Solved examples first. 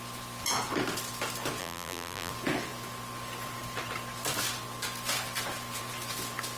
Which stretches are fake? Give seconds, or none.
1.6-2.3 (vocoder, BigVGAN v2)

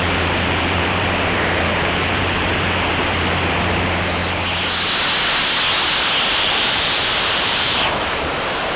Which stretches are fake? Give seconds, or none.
0.0-4.2 (vocoder, BigVGAN v2); 6.3-8.8

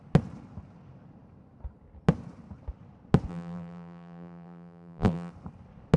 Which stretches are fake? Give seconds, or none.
3.3-5.3 (vocoder, BigVGAN v2)

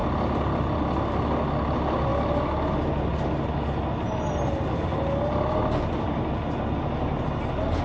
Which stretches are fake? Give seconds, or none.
none

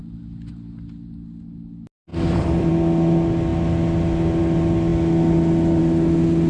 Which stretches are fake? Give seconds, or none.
2.1-2.7 (vocoder, BigVGAN v2)